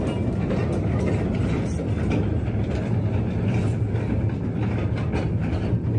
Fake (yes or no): no